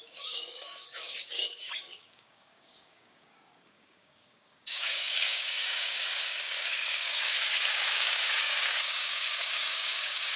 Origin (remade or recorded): remade